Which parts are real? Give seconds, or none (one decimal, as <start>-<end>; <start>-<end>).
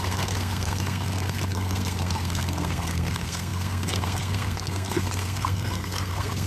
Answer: none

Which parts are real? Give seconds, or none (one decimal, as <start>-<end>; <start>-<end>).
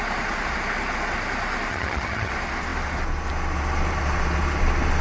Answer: 0.0-1.7; 2.3-5.0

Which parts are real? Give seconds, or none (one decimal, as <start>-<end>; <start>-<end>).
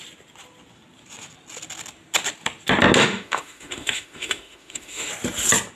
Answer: 0.0-3.0; 5.1-5.8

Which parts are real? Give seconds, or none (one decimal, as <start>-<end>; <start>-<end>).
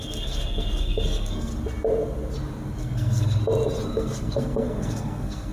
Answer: 1.5-2.8; 3.4-3.9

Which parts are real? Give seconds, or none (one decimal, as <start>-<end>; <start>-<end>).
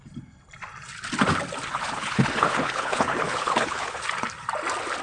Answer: 0.0-1.7; 4.0-5.0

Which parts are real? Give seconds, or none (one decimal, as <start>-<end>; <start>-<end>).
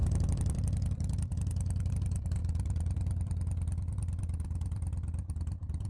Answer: 1.9-2.4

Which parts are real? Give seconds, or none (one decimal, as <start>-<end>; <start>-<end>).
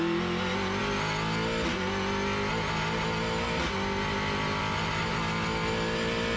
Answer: 0.0-6.4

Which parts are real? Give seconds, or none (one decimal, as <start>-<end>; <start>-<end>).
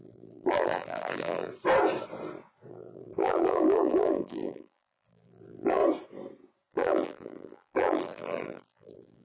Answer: 1.5-2.7; 5.8-6.7